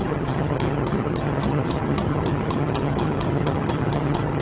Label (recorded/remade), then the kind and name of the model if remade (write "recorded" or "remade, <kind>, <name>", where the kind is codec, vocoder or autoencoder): remade, vocoder, HiFi-GAN